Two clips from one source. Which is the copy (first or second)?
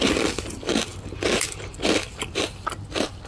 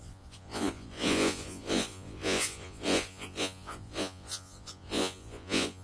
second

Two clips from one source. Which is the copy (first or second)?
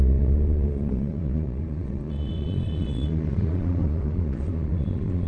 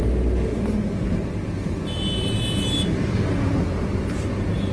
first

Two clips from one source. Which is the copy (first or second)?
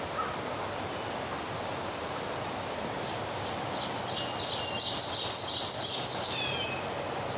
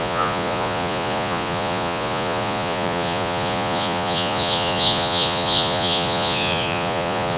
second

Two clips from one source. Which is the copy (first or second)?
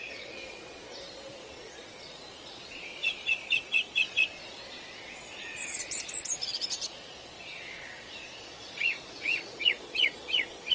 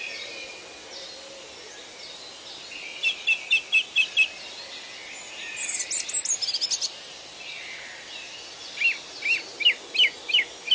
first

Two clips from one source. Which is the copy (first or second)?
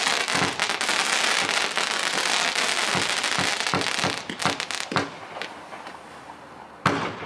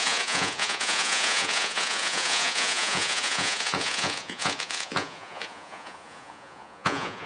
second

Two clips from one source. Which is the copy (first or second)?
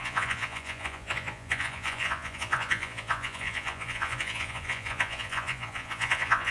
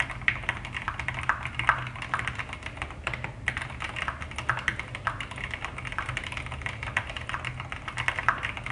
first